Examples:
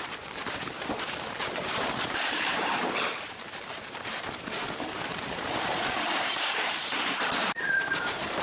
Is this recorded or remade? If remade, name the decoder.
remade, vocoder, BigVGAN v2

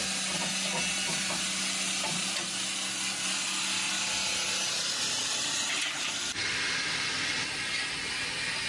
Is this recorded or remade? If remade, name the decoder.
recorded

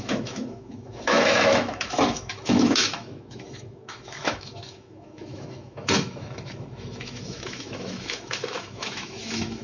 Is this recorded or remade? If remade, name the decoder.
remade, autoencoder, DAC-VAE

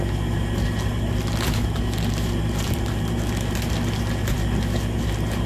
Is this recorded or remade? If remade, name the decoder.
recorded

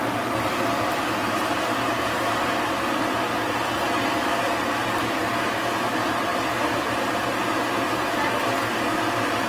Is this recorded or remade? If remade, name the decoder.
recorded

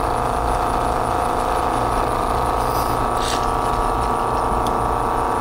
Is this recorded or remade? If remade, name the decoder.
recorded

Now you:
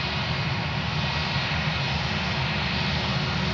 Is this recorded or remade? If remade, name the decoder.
recorded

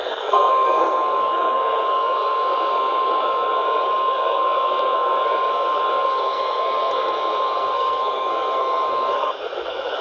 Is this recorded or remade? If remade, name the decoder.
remade, codec, SNAC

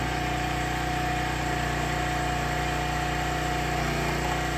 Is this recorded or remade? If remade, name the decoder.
recorded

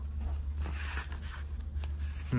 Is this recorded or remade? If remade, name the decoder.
recorded